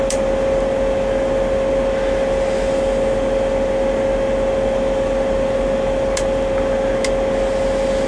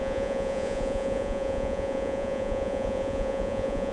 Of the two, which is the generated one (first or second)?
second